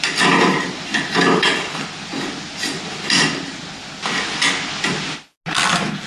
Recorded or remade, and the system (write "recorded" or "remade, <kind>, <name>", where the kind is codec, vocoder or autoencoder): recorded